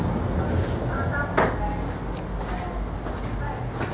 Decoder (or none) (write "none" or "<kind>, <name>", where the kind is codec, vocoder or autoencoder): none